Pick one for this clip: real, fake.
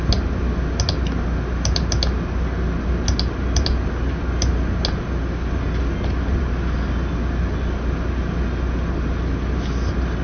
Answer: real